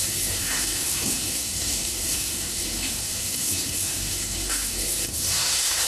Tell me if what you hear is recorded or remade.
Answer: remade